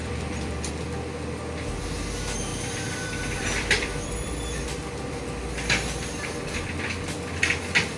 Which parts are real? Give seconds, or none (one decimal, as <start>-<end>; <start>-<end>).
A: 0.7-2.5; 4.6-8.0